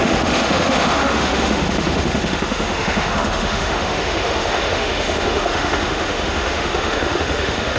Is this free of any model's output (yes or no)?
no